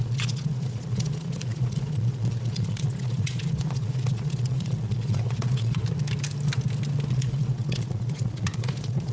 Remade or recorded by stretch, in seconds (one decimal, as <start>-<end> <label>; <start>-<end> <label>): 0.0-5.8 remade; 5.8-7.1 recorded; 7.1-9.1 remade